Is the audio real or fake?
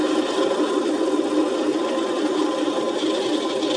real